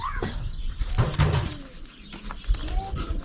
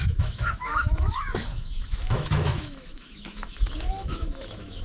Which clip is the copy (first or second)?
second